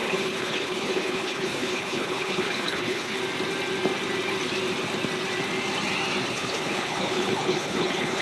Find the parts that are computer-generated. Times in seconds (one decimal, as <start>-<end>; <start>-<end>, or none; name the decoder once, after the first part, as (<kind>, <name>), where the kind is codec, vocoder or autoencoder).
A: 0.0-3.2 (codec, HILCodec); 6.3-8.2